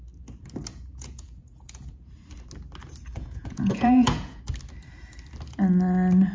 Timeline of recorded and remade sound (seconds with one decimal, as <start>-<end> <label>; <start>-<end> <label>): 0.0-0.7 recorded; 0.7-2.1 remade; 2.1-3.1 recorded; 3.1-4.4 remade; 4.4-6.3 recorded